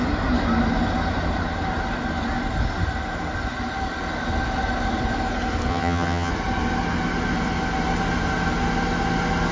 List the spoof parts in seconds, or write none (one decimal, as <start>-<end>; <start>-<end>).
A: 5.7-6.3